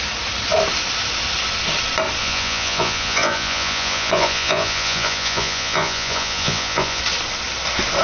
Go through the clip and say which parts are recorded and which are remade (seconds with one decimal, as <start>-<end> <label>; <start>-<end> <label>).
0.0-2.2 recorded; 2.2-7.0 remade; 7.0-8.0 recorded